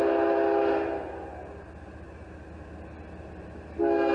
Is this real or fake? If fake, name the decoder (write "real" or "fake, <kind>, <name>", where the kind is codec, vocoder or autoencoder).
real